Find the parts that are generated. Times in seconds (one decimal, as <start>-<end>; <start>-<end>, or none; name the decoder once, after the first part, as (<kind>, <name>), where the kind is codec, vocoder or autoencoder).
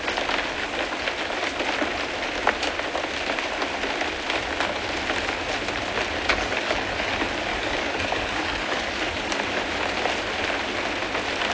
6.3-7.1 (codec, DAC); 7.5-9.6